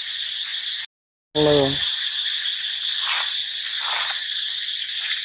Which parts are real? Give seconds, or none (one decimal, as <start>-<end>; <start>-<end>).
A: 0.0-5.2